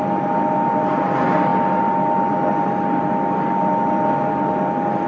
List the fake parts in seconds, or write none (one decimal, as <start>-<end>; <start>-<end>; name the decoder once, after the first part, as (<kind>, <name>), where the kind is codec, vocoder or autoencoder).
none